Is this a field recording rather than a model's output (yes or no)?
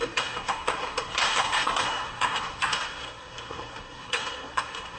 no